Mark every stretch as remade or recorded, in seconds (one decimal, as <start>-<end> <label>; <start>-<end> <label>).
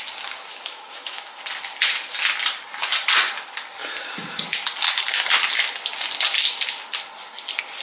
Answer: 0.0-0.5 recorded; 0.5-1.4 remade; 1.4-7.8 recorded